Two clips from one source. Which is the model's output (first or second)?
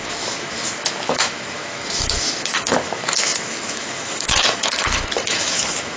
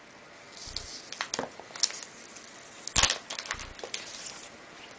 first